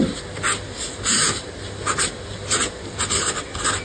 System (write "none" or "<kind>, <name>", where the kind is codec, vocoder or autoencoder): none